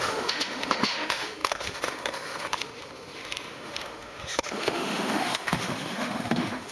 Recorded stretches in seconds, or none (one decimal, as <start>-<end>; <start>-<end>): none